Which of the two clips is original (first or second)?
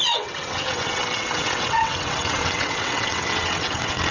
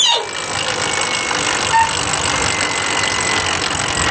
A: second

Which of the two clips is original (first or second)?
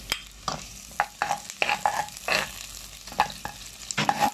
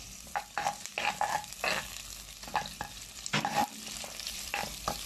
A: first